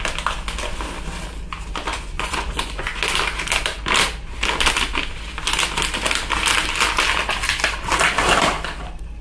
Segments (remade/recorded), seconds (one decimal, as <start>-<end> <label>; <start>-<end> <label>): 0.0-1.9 recorded; 1.9-3.0 remade; 3.0-9.2 recorded